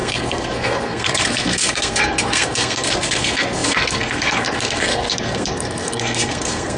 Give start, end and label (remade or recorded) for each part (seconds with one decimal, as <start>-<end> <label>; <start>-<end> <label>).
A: 0.0-6.8 remade